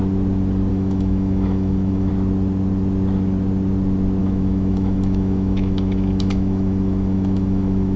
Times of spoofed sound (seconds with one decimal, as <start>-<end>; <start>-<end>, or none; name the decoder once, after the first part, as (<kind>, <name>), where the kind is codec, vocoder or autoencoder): 0.7-2.1 (autoencoder, DAC-VAE); 4.2-8.0